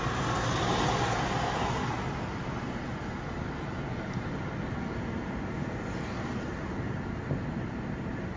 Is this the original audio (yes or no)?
yes